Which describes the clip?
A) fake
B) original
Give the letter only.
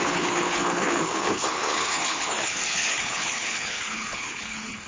A